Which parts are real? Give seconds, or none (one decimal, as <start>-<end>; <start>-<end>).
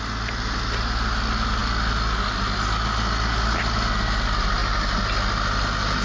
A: 0.0-6.0